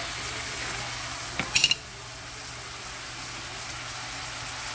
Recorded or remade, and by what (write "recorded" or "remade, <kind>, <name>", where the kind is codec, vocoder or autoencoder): recorded